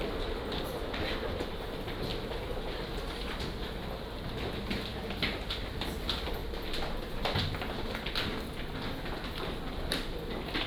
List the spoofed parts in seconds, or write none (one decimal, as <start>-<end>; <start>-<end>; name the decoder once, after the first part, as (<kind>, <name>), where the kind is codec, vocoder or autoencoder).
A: none